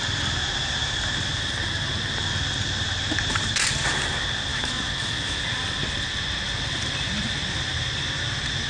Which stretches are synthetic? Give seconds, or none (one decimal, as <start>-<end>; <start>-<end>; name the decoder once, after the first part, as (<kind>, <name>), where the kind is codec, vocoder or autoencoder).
4.5-5.4 (autoencoder, DAC-VAE)